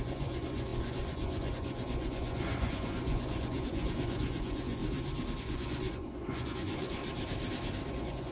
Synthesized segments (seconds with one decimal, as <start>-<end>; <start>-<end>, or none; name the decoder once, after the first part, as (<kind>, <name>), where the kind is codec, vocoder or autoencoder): 0.0-4.8 (vocoder, Vocos); 5.4-7.0; 7.9-8.3